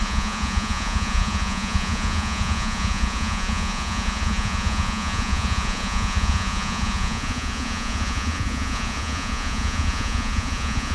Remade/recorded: remade